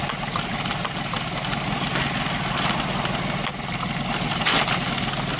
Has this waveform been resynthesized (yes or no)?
no